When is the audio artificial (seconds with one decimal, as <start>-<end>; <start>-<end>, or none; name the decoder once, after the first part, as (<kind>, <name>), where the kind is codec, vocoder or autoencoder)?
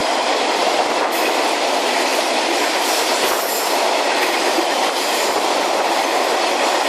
0.0-0.5 (vocoder, BigVGAN v2)